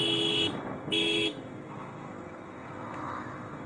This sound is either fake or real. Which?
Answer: fake